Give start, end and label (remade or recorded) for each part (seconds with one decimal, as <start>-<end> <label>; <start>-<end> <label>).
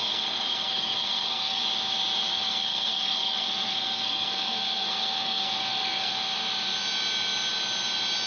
0.0-1.6 remade; 1.6-2.3 recorded; 2.3-6.1 remade; 6.1-8.3 recorded